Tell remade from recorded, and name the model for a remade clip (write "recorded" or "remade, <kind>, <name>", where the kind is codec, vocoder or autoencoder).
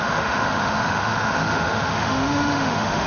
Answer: remade, autoencoder, DAC-VAE